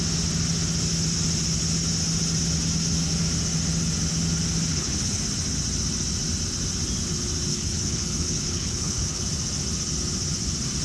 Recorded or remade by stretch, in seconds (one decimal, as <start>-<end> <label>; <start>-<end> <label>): 0.0-4.7 recorded; 4.7-5.2 remade; 5.2-7.5 recorded; 7.5-9.2 remade; 9.2-10.8 recorded